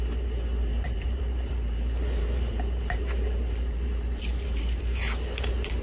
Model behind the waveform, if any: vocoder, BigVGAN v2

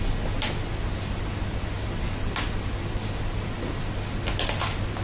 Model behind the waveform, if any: none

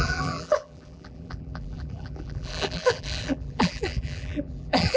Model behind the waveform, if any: vocoder, BigVGAN v2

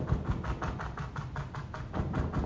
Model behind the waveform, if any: none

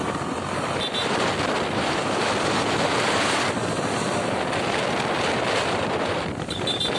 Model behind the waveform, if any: vocoder, BigVGAN v2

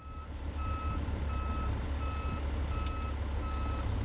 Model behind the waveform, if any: none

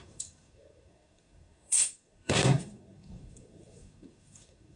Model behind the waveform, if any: codec, SNAC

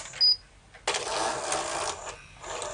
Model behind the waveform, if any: none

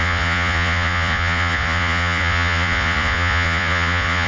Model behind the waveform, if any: vocoder, Vocos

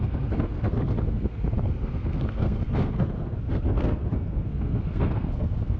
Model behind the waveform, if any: codec, SNAC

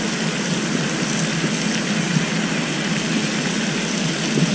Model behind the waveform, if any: none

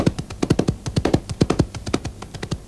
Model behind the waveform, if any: none